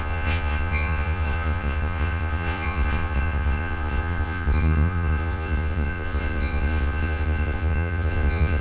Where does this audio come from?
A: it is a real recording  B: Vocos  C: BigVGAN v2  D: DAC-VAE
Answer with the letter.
B